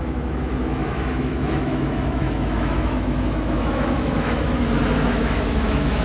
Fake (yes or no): yes